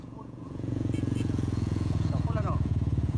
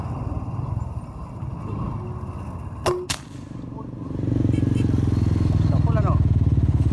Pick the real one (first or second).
second